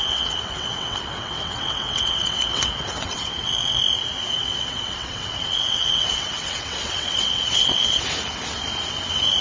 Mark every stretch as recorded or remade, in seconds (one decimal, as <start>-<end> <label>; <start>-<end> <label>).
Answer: 0.0-3.8 remade; 3.8-4.4 recorded; 4.4-8.0 remade; 8.0-9.4 recorded